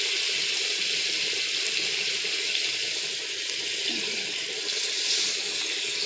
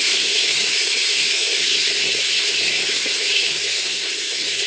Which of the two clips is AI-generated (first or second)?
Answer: second